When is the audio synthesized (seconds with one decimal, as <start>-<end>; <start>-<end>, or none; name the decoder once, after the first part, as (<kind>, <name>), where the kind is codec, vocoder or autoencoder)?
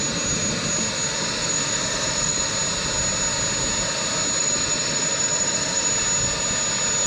1.4-2.5 (vocoder, BigVGAN v2); 4.4-5.9